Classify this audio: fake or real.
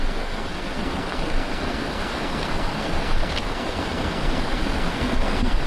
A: fake